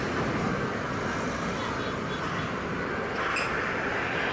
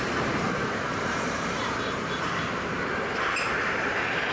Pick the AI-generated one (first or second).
second